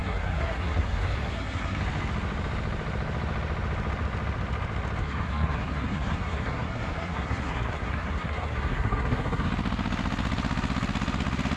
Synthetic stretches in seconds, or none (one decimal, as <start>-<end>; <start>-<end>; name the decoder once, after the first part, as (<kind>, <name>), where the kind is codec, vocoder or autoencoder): 0.0-1.8 (codec, SNAC); 5.0-9.5